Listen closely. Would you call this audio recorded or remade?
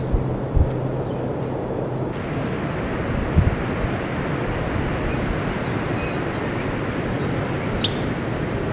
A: recorded